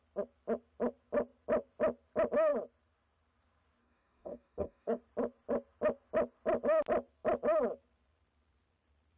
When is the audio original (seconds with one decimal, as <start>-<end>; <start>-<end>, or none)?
0.0-3.8; 5.0-9.2